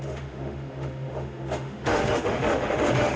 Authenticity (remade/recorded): remade